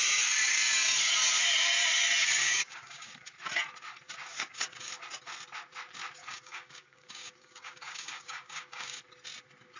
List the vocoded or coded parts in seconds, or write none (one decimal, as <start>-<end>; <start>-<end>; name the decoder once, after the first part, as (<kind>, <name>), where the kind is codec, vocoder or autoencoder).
2.2-3.1 (codec, DAC); 4.3-4.9; 6.2-9.0